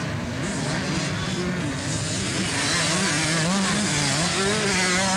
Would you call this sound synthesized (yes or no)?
no